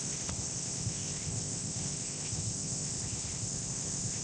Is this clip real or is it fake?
fake